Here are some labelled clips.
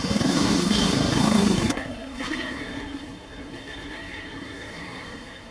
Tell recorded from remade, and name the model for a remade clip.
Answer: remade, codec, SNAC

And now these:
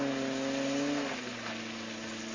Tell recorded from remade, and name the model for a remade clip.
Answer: recorded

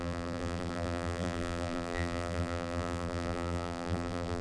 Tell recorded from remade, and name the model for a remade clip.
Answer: remade, vocoder, BigVGAN v2